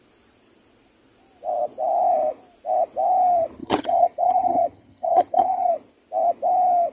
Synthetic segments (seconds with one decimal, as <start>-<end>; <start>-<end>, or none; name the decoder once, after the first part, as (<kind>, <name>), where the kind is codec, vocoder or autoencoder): 3.6-5.7 (vocoder, HiFi-GAN)